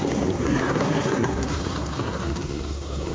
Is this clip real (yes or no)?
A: no